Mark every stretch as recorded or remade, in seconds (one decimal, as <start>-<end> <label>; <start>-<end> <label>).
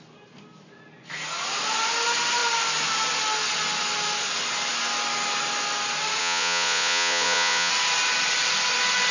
0.0-6.2 recorded; 6.2-7.7 remade; 7.7-9.1 recorded